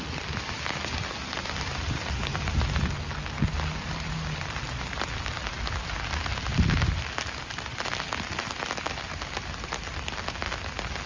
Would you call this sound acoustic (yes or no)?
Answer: yes